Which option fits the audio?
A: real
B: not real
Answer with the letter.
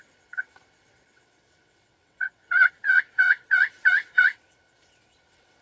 B